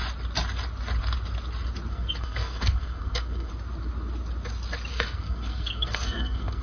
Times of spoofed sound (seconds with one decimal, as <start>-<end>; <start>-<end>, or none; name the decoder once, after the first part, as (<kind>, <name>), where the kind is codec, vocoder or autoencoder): 1.9-3.5 (codec, SNAC); 4.9-6.6